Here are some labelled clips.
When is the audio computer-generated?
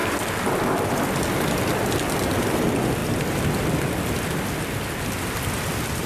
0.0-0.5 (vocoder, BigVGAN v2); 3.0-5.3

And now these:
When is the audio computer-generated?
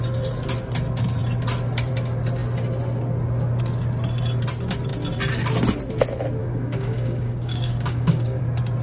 6.4-8.4 (codec, DAC)